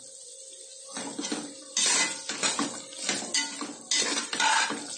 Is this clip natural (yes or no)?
yes